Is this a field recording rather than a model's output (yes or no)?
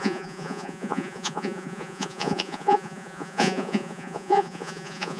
no